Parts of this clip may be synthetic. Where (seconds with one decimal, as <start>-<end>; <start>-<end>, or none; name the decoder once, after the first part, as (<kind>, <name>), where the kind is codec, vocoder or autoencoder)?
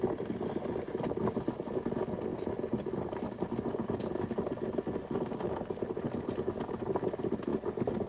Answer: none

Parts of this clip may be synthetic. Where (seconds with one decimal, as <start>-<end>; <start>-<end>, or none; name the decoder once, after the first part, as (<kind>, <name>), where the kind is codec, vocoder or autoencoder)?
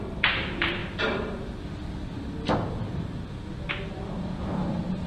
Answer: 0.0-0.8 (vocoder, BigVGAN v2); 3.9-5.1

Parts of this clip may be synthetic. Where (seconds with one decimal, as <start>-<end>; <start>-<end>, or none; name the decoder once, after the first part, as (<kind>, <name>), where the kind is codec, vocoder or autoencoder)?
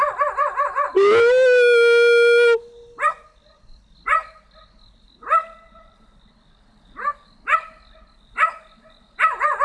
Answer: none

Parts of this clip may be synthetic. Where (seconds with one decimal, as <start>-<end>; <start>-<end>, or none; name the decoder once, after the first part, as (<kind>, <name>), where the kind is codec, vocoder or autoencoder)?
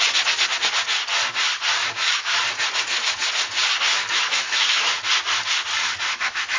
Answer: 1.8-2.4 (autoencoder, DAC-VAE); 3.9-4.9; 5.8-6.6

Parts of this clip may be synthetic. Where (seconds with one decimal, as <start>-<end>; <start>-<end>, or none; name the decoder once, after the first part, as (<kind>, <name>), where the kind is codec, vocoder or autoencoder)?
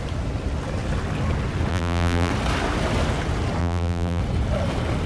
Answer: 1.7-2.3 (vocoder, BigVGAN v2); 3.6-4.2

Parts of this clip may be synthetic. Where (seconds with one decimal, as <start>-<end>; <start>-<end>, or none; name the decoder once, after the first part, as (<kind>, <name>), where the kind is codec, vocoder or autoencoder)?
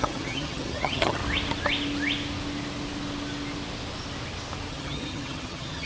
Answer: 0.0-1.2 (vocoder, HiFi-GAN); 4.7-5.9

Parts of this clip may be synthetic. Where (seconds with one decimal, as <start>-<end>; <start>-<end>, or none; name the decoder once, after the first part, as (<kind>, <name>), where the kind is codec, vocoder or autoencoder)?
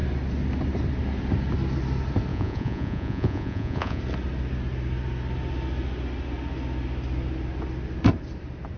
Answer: 2.3-4.0 (vocoder, Vocos)